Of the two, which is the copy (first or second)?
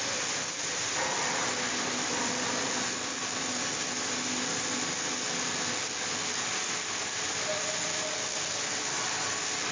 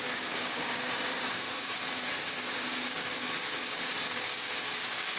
second